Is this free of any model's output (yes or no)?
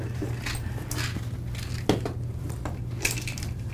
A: yes